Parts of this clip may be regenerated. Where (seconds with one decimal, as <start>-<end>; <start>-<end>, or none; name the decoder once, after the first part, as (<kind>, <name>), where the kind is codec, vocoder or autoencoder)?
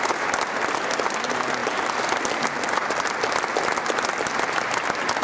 none